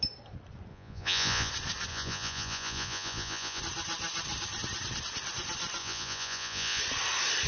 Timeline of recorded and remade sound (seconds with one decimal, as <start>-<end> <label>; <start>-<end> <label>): 0.0-0.7 recorded; 0.7-1.5 remade; 1.5-1.9 recorded; 1.9-3.6 remade; 3.6-5.8 recorded; 5.8-6.8 remade; 6.8-7.5 recorded